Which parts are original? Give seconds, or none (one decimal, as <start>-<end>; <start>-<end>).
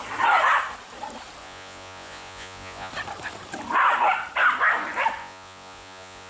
0.0-1.4; 2.9-5.2